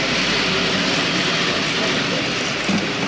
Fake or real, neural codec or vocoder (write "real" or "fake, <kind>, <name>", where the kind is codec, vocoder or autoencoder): real